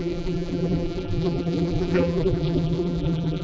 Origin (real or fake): fake